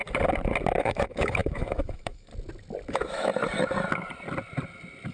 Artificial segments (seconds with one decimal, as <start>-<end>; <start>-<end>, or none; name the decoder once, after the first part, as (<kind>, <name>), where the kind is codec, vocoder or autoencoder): 0.8-2.3 (autoencoder, DAC-VAE); 2.9-3.3